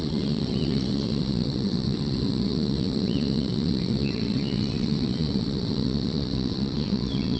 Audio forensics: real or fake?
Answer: fake